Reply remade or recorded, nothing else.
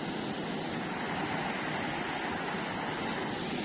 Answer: recorded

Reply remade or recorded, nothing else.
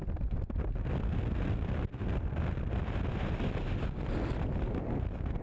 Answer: recorded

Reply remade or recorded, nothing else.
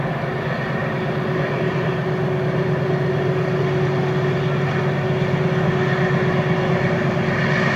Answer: recorded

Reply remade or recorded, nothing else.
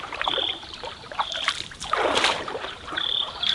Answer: remade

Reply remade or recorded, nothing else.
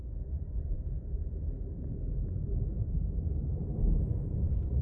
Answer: remade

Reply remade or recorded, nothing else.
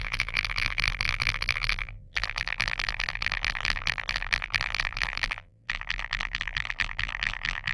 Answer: remade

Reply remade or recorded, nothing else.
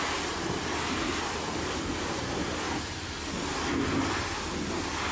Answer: recorded